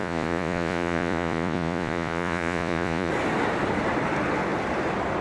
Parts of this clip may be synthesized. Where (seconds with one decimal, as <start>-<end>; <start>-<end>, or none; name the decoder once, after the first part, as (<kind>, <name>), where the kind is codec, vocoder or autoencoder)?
0.0-3.1 (vocoder, Vocos)